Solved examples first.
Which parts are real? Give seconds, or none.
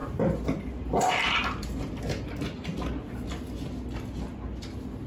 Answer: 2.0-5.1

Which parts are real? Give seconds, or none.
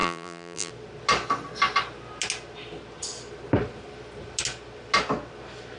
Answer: 0.7-5.8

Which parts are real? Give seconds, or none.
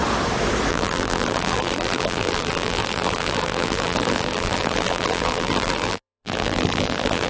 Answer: 0.0-0.7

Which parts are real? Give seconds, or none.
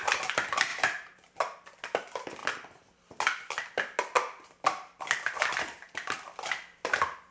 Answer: 0.0-0.7; 1.4-7.3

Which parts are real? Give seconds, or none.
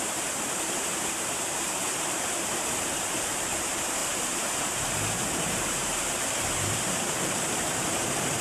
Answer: none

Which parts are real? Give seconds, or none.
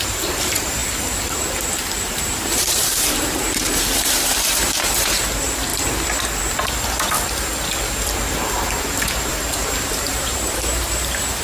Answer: 0.8-2.1; 5.7-8.8